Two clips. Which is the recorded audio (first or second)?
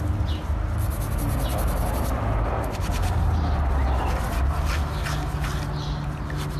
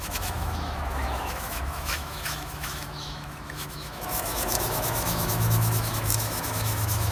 first